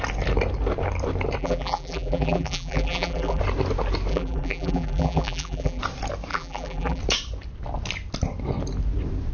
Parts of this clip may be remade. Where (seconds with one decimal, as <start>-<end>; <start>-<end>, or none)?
1.4-3.4; 4.1-5.8; 6.3-7.0